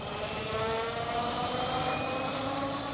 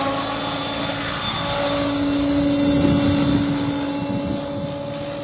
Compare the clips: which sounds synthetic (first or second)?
first